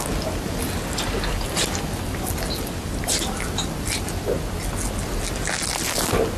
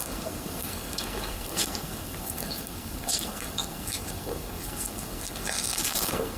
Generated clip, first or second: second